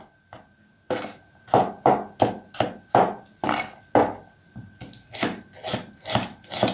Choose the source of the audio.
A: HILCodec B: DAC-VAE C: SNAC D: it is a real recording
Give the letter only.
D